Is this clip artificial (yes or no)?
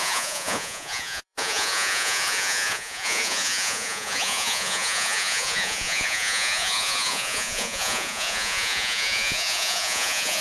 yes